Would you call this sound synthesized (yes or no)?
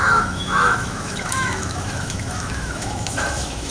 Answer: yes